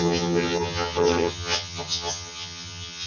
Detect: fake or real fake